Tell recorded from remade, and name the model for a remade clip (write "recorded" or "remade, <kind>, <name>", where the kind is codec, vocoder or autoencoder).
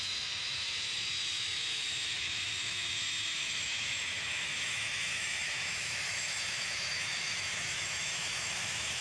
remade, autoencoder, DAC-VAE